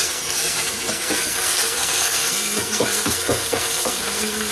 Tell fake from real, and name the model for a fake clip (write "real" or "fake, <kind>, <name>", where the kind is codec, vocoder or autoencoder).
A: fake, codec, SNAC